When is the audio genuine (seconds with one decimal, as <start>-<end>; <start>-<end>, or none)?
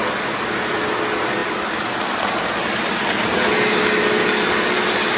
0.0-5.2